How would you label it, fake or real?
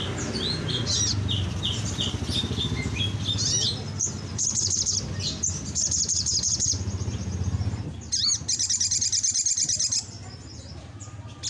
real